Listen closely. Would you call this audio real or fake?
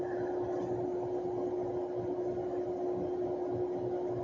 real